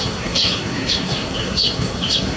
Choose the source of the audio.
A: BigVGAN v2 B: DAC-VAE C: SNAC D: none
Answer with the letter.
C